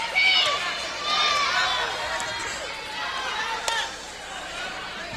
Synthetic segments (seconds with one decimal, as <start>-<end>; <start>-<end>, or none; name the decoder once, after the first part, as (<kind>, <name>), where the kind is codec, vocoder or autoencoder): none